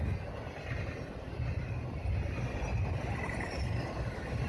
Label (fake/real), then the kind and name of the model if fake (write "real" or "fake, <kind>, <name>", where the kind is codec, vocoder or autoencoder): real